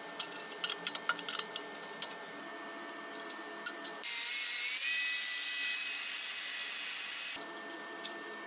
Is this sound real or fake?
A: real